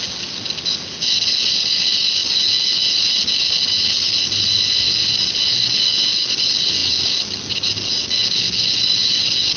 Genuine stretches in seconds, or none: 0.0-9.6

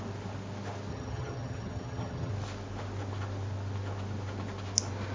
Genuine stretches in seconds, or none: 0.0-0.9; 2.3-5.1

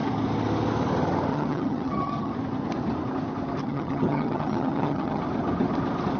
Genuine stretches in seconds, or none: 0.0-1.3; 2.3-3.6; 5.2-6.2

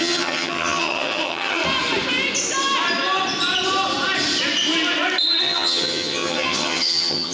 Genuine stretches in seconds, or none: 1.6-5.4

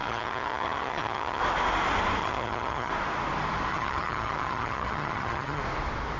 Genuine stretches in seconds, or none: 1.4-2.2; 2.9-3.7; 5.6-6.2